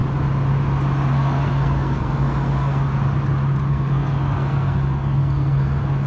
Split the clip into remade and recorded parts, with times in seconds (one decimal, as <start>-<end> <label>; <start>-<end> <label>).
0.0-1.1 recorded; 1.1-2.9 remade; 2.9-3.7 recorded; 3.7-6.1 remade